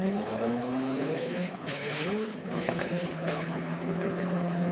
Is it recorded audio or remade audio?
remade